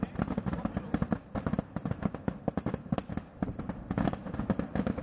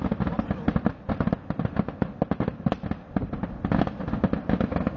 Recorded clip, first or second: second